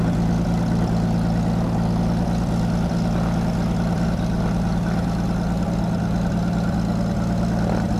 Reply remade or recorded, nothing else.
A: recorded